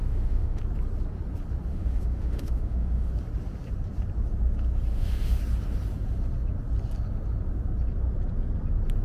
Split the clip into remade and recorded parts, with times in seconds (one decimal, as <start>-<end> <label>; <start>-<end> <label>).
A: 0.0-0.6 remade; 0.6-1.7 recorded; 1.7-3.1 remade; 3.1-4.9 recorded; 4.9-5.4 remade; 5.4-9.0 recorded